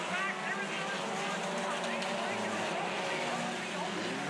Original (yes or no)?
yes